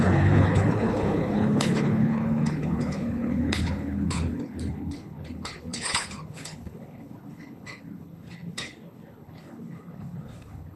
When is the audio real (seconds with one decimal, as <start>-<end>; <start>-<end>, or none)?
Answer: none